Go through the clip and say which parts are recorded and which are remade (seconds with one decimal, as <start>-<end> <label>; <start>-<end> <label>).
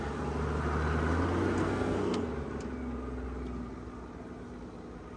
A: 0.0-1.6 recorded; 1.6-2.3 remade; 2.3-5.2 recorded